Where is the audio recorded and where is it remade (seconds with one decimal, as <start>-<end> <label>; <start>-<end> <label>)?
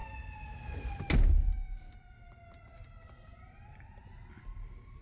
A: 0.0-5.0 recorded